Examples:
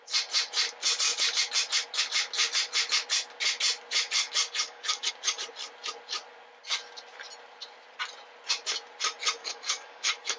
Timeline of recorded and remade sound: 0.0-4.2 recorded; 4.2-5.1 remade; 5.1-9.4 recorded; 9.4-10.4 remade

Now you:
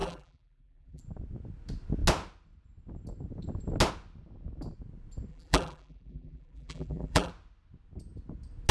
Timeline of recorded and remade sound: 0.0-1.0 remade; 1.0-5.3 recorded; 5.3-7.3 remade; 7.3-8.7 recorded